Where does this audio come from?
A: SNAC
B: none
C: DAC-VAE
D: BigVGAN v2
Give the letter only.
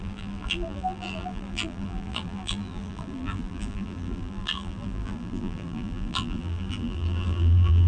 D